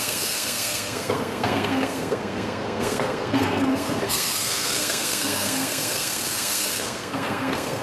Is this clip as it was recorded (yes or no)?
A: no